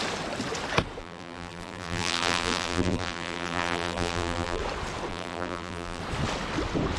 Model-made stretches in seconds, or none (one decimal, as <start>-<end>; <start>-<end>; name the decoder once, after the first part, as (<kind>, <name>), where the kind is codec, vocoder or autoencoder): 1.0-4.6 (vocoder, BigVGAN v2); 5.1-6.0